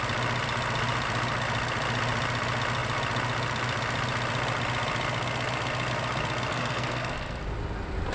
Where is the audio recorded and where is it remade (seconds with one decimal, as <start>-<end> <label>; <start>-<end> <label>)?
0.0-6.5 recorded; 6.5-7.4 remade; 7.4-8.1 recorded